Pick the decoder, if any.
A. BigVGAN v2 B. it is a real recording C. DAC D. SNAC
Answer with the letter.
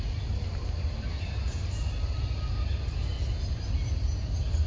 B